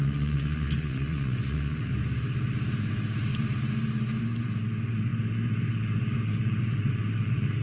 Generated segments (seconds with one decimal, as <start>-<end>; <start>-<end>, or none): 0.0-1.9; 2.8-3.3; 4.2-7.6